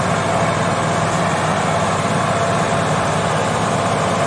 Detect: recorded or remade recorded